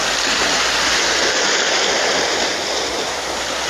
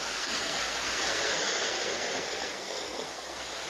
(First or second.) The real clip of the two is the first